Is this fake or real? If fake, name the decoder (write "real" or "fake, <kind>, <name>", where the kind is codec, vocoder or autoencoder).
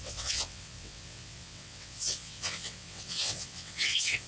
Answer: fake, vocoder, WaveNeXt